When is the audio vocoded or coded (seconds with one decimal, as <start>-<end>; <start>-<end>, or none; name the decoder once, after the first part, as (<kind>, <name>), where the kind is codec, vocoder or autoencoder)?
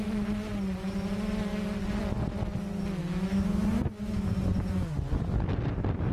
3.0-4.3 (autoencoder, DAC-VAE)